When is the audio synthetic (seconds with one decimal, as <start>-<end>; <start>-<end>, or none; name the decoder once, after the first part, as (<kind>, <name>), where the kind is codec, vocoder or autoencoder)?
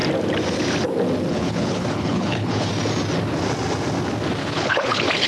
1.3-2.7 (codec, HILCodec); 4.4-5.3